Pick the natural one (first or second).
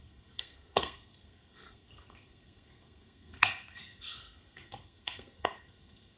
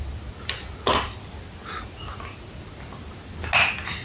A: second